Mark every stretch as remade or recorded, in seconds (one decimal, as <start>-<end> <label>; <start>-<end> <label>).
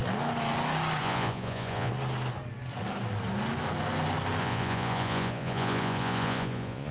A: 0.0-1.0 recorded; 1.0-1.9 remade; 1.9-4.4 recorded; 4.4-6.9 remade